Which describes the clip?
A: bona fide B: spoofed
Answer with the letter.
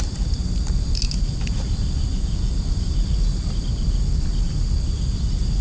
A